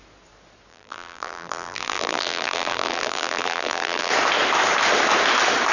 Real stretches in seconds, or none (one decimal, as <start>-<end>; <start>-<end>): 0.0-0.7; 4.1-5.7